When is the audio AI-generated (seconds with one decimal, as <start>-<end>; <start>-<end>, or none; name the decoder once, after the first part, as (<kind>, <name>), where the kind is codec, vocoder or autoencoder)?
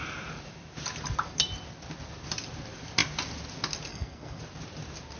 3.9-4.4 (codec, SNAC)